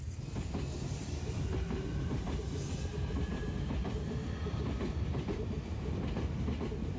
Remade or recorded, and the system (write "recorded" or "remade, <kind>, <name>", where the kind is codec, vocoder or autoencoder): recorded